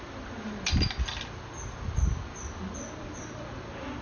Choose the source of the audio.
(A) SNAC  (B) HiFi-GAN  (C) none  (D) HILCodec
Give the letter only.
C